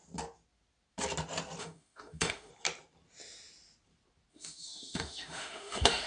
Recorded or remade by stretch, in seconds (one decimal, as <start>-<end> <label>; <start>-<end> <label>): 0.0-1.6 recorded; 1.6-2.5 remade; 2.5-4.3 recorded; 4.3-6.1 remade